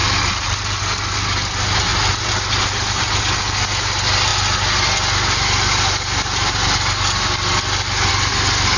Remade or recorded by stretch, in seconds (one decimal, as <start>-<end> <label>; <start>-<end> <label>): 0.0-0.8 remade; 0.8-1.9 recorded; 1.9-3.2 remade; 3.2-8.8 recorded